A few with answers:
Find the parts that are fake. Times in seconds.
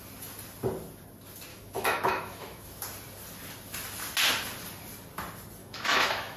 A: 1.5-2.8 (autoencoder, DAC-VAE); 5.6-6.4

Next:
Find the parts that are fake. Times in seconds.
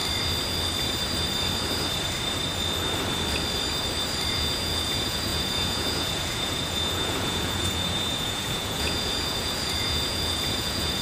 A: 4.3-11.0 (vocoder, Vocos)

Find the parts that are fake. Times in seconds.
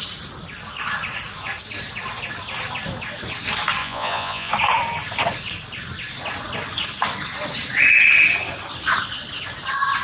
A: 3.8-4.5 (vocoder, Vocos)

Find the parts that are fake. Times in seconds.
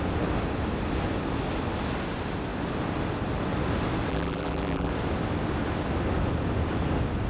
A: 4.1-4.9 (vocoder, BigVGAN v2)